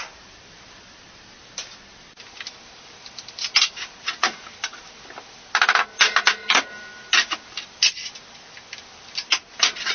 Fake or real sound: real